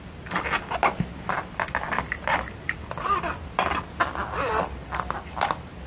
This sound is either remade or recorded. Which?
recorded